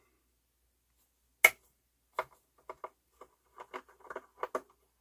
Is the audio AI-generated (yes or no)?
no